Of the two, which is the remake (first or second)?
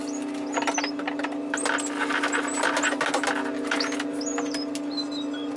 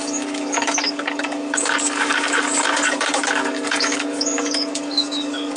second